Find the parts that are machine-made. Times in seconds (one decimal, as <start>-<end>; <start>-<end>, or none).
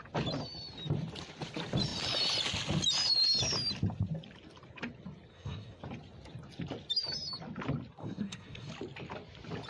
5.3-5.8; 8.0-8.7